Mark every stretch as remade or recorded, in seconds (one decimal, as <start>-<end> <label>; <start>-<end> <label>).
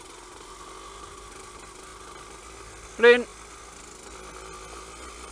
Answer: 0.0-5.3 recorded